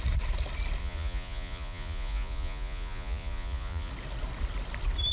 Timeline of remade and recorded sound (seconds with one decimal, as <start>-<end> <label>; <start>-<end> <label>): 0.0-0.8 recorded; 0.8-3.9 remade; 3.9-5.1 recorded